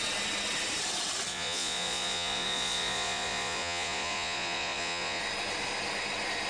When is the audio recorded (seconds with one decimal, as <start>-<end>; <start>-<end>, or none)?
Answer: 0.0-1.3; 5.2-6.5